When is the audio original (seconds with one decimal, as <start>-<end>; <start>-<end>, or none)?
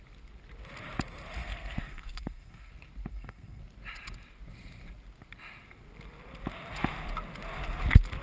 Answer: 0.0-1.4; 2.7-3.1; 3.6-8.2